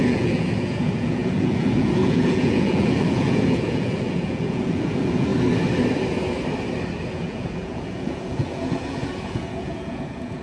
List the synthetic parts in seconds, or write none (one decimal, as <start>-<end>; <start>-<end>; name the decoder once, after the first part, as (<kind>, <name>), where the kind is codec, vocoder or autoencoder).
0.0-5.3 (vocoder, Vocos); 7.1-10.4